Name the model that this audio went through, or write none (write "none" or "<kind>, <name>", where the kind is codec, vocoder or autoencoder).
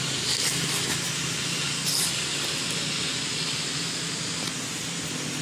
none